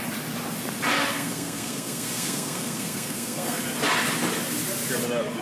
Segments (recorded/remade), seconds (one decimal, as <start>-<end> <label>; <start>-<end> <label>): 0.0-1.1 recorded; 1.1-3.6 remade; 3.6-5.4 recorded